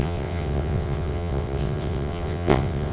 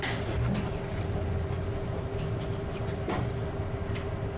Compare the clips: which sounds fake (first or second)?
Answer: first